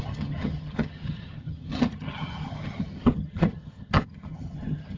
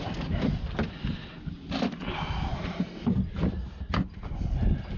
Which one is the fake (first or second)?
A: first